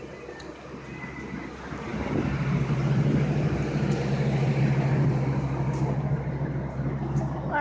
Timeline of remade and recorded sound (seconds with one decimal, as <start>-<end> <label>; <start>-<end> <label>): 0.0-7.6 recorded